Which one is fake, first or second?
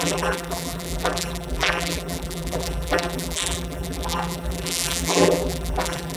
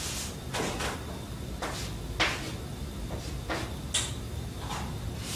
first